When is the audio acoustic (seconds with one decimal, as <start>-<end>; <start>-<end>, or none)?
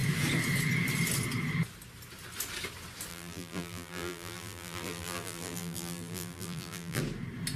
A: 0.0-3.1; 7.0-7.6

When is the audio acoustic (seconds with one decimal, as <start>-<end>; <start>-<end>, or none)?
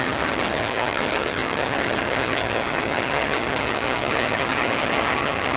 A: none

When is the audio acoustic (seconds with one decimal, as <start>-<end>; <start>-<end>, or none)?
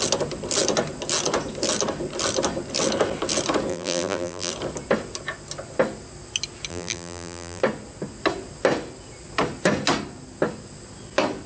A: 0.0-3.7; 4.5-6.7; 7.6-11.5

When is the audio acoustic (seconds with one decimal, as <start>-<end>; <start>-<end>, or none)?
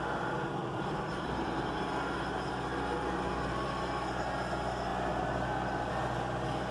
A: 0.0-0.6; 1.6-6.7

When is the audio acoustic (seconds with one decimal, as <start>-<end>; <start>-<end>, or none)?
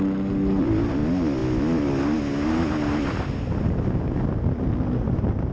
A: 0.0-5.5